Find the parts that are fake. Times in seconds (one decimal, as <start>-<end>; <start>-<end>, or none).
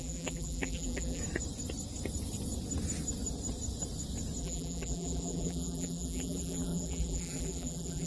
0.0-1.2; 4.4-8.1